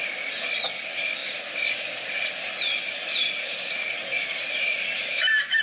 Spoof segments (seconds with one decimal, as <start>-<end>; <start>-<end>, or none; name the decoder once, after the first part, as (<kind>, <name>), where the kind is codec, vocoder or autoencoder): 4.0-5.6 (vocoder, BigVGAN v2)